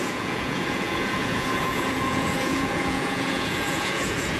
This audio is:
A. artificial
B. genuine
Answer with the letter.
A